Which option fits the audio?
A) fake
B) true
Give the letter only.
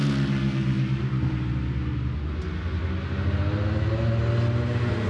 B